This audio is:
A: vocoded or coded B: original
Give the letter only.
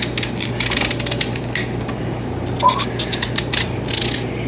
B